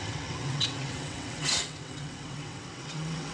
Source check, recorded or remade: remade